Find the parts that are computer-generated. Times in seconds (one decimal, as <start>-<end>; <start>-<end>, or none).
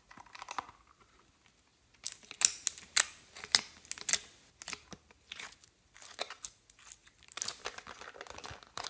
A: none